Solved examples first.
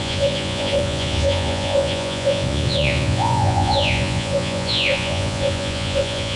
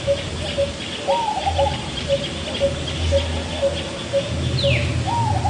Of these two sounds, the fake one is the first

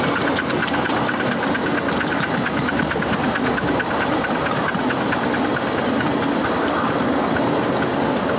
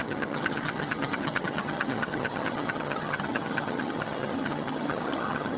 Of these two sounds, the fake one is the second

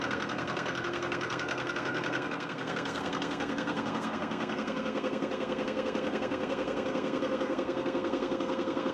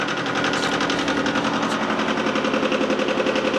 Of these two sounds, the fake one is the first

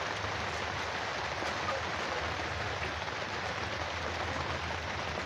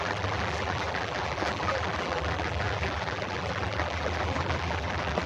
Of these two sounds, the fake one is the second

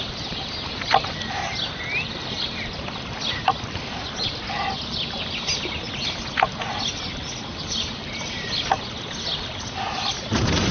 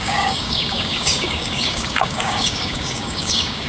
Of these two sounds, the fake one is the second